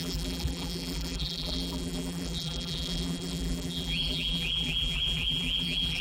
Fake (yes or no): yes